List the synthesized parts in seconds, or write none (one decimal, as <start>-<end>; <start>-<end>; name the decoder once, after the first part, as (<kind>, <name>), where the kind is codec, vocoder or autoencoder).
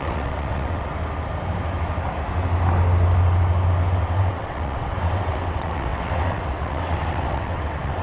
0.0-0.9 (vocoder, WaveNeXt); 3.9-8.0